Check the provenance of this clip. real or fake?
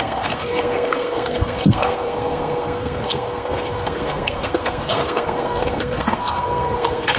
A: fake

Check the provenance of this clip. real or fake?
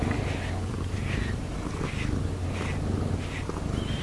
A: real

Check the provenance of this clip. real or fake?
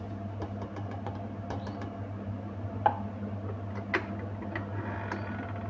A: real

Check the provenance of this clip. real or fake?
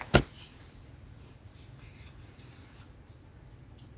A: real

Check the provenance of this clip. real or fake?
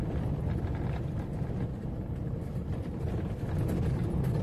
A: real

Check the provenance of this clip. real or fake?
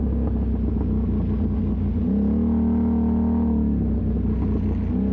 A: real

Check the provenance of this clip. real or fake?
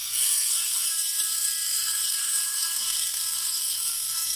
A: fake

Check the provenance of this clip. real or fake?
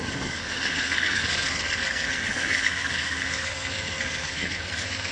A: fake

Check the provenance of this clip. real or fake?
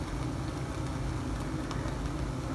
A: real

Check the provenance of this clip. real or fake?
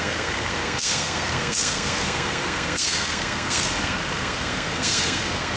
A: fake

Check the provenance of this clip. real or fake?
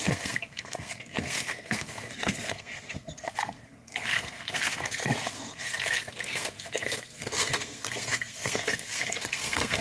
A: fake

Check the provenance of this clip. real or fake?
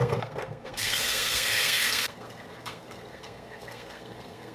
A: fake